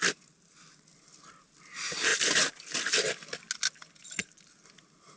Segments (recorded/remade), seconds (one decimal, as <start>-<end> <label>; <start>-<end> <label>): 0.0-5.2 recorded